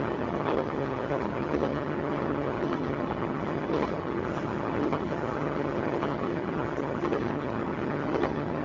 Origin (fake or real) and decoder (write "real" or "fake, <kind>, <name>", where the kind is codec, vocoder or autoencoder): fake, vocoder, HiFi-GAN